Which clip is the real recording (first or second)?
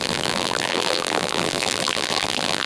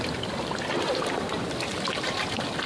second